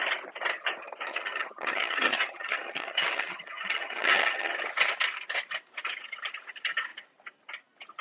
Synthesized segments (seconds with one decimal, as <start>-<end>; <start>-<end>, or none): 1.1-4.5